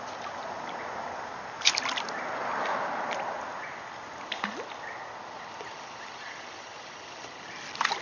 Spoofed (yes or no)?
no